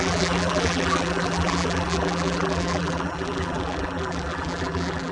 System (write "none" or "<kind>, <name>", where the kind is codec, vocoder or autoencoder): vocoder, BigVGAN v2